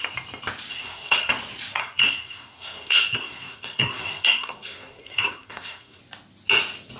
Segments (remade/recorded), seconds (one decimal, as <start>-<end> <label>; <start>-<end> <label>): 0.0-0.7 recorded; 0.7-1.3 remade; 1.3-1.8 recorded; 1.8-6.0 remade; 6.0-7.0 recorded